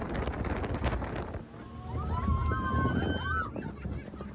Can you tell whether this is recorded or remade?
recorded